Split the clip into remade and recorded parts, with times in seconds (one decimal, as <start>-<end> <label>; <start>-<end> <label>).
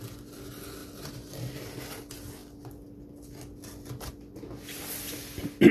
0.0-5.7 recorded